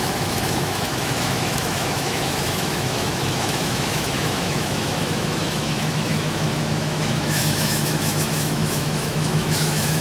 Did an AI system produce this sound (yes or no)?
yes